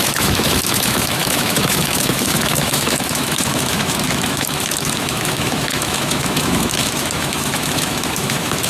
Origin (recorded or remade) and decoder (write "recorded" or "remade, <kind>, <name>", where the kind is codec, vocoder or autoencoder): remade, autoencoder, DAC-VAE